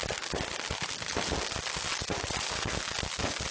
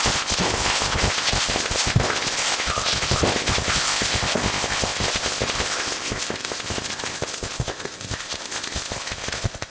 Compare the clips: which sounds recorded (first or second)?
first